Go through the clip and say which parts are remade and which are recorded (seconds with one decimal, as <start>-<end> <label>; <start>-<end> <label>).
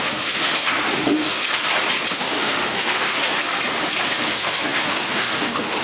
0.0-1.6 remade; 1.6-2.1 recorded; 2.1-3.3 remade; 3.3-4.1 recorded; 4.1-5.8 remade